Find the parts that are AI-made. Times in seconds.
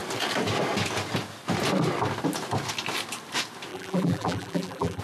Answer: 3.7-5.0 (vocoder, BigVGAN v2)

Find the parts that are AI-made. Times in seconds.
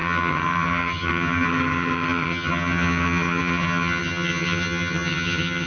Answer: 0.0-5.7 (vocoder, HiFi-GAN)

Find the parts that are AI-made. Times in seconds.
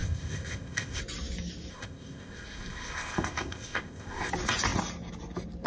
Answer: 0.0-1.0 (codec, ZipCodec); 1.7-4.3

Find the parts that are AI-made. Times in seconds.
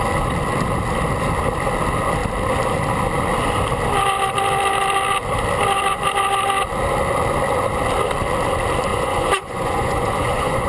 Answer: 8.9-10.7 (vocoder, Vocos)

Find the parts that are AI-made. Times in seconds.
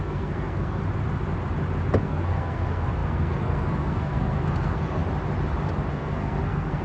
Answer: 0.0-0.8 (codec, SNAC); 2.0-5.0; 5.9-6.8